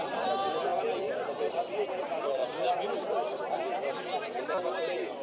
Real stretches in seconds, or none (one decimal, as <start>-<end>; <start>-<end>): 0.0-5.2